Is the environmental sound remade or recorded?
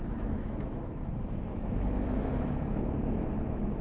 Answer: remade